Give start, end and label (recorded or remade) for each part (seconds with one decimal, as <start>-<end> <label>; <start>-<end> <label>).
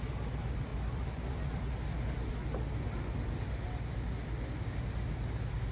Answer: 0.0-0.7 recorded; 0.7-2.3 remade; 2.3-5.7 recorded